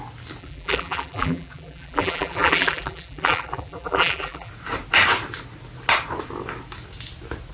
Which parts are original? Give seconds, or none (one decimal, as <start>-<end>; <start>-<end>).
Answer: 0.0-0.4; 4.5-7.5